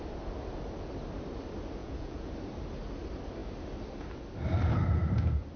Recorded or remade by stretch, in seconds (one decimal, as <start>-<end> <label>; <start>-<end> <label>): 0.0-1.8 recorded; 1.8-2.3 remade; 2.3-5.6 recorded